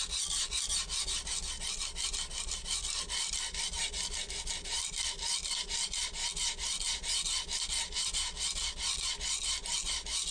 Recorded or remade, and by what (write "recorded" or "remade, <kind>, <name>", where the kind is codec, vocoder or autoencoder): recorded